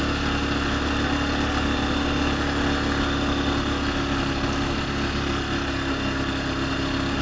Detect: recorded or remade recorded